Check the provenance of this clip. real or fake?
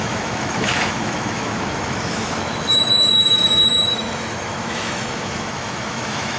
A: fake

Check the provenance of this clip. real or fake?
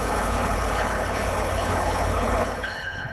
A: fake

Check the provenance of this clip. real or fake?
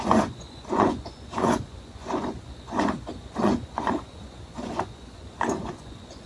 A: fake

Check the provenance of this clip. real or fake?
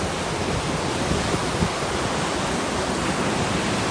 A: real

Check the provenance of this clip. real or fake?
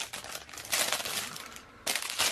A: real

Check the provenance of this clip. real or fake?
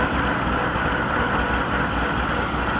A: real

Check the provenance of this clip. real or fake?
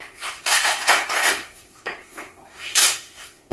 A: fake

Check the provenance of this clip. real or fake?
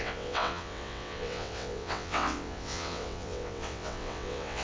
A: fake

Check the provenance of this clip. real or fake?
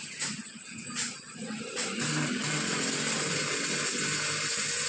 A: real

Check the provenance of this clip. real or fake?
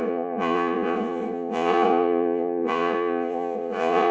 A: fake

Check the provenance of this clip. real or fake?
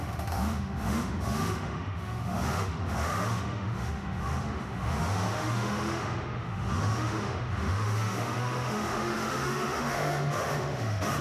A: fake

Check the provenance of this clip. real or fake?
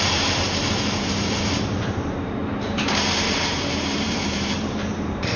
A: fake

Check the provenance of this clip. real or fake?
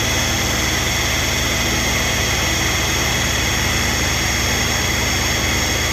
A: real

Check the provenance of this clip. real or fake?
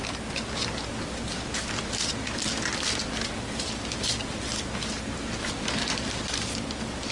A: fake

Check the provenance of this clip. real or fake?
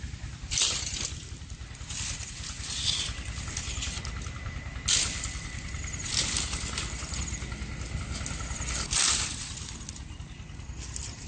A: real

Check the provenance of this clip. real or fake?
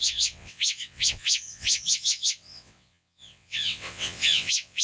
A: fake